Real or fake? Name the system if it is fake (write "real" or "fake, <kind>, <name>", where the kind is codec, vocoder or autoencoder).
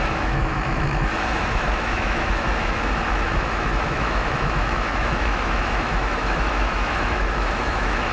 fake, autoencoder, DAC-VAE